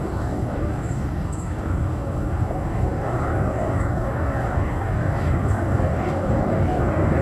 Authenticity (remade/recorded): remade